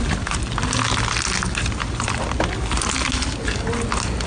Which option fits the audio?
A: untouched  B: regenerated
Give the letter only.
A